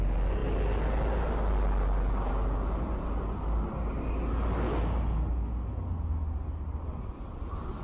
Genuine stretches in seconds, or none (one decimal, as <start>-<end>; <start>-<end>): 0.0-7.8